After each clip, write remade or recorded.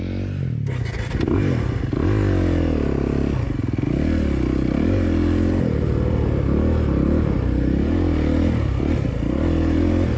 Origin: recorded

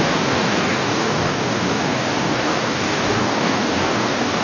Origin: remade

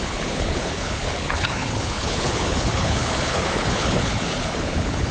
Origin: remade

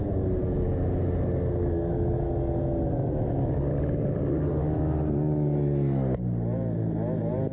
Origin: recorded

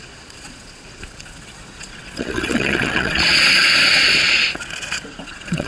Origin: remade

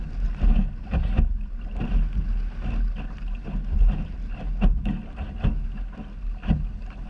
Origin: recorded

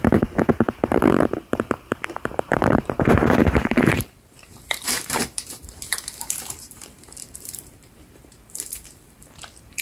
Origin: remade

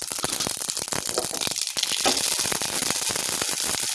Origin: recorded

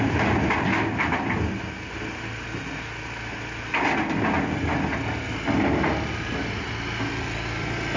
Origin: recorded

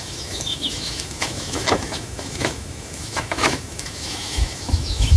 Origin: remade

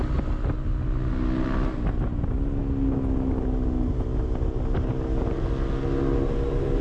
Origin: recorded